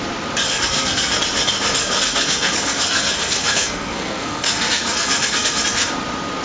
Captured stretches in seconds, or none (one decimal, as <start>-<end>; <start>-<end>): 0.0-0.5; 1.1-1.8; 5.6-6.4